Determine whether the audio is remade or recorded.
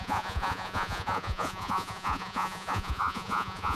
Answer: remade